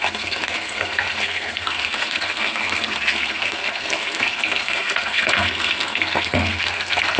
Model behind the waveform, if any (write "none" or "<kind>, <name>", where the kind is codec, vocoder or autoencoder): codec, SNAC